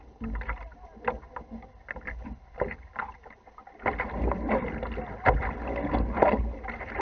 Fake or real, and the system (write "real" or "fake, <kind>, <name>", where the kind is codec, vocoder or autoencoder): real